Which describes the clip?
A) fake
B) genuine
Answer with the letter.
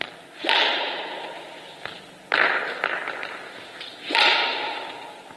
B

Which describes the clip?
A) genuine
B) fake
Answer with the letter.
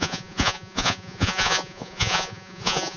B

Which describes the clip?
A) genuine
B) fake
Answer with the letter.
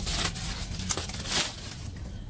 A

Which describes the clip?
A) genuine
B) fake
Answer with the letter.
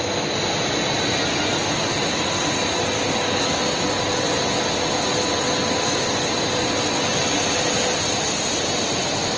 A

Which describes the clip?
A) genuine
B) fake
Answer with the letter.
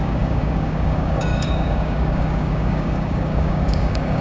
B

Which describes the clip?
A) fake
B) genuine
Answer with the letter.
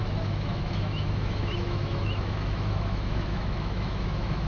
A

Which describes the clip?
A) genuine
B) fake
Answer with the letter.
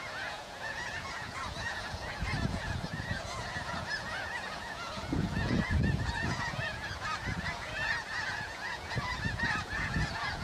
B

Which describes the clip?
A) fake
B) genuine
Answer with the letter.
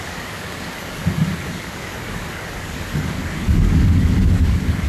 A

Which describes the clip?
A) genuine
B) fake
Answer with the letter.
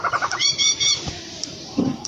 B